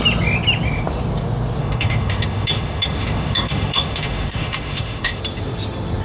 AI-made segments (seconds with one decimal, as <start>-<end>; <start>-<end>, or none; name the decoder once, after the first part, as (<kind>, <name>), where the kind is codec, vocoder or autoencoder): 1.6-5.2 (autoencoder, DAC-VAE)